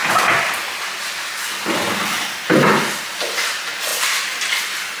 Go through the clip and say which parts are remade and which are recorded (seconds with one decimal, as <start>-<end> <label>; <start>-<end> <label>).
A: 0.0-5.0 recorded